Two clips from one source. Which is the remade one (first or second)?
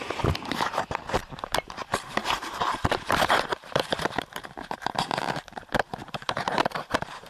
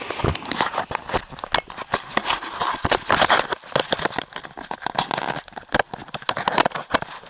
first